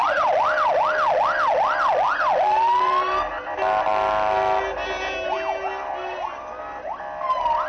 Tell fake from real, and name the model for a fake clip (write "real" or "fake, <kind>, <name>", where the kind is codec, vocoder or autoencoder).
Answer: real